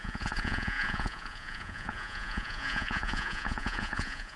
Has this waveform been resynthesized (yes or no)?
yes